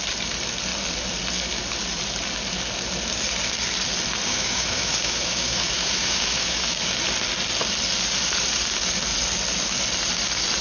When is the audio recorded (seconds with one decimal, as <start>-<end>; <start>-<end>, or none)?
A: 0.0-4.3; 6.8-10.6